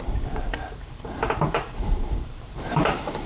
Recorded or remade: remade